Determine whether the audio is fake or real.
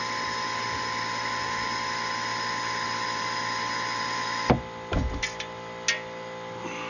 real